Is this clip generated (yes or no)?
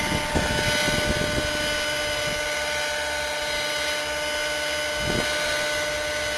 no